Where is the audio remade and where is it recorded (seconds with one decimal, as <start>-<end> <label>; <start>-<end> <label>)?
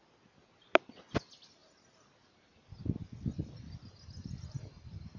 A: 0.0-5.2 recorded